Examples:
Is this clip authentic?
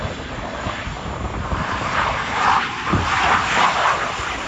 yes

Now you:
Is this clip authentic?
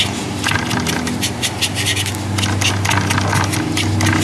yes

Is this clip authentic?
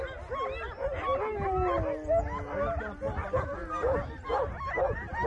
yes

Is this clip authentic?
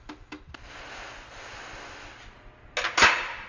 yes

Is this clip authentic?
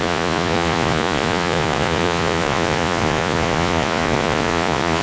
no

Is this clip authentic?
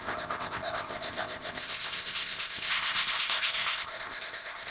no